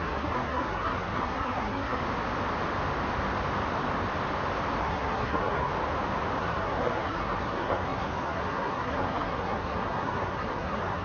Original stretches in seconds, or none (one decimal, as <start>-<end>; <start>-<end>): 2.0-4.8; 5.7-6.4